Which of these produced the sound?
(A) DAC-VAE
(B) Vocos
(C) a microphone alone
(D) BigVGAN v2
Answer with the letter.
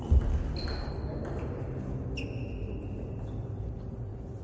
C